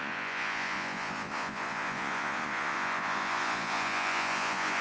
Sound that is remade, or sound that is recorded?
remade